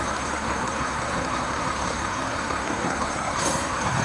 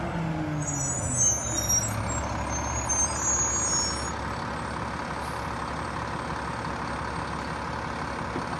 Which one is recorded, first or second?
second